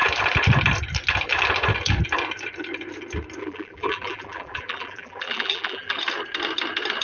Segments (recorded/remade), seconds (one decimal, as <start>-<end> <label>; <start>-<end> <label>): 0.0-3.4 recorded; 3.4-6.0 remade; 6.0-7.0 recorded